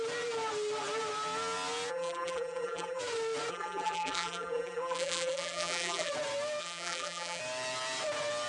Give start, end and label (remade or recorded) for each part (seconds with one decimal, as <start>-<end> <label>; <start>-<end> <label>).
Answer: 0.0-1.9 recorded; 1.9-3.0 remade; 3.0-3.5 recorded; 3.5-6.1 remade; 6.1-6.6 recorded; 6.6-7.4 remade; 7.4-8.5 recorded